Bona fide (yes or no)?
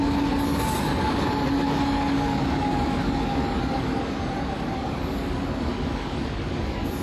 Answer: no